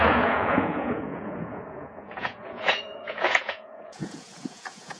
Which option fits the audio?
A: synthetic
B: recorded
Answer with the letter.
A